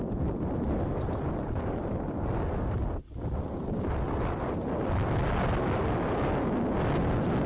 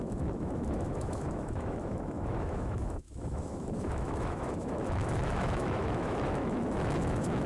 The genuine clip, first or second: first